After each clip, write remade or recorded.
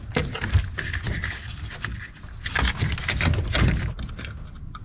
recorded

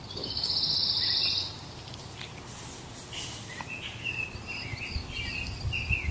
recorded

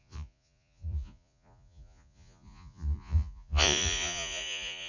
remade